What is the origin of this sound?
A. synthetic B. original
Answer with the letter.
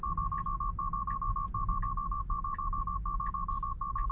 B